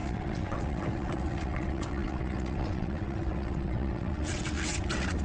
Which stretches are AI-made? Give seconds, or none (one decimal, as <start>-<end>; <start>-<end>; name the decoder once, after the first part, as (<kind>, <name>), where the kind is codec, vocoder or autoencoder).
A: 0.0-5.2 (vocoder, WaveNeXt)